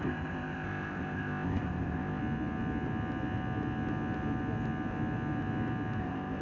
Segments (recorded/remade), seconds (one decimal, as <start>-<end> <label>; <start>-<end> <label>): 0.0-2.2 remade; 2.2-6.0 recorded; 6.0-6.4 remade

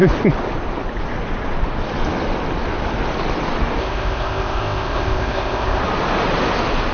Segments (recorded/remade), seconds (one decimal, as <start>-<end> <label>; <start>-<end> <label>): 0.0-3.8 recorded; 3.8-5.8 remade; 5.8-6.9 recorded

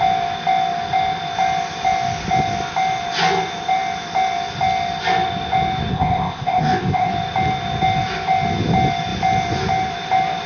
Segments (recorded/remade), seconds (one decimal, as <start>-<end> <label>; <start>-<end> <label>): 0.0-5.9 recorded; 5.9-7.1 remade; 7.1-10.5 recorded